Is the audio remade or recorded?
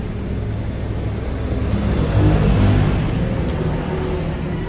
recorded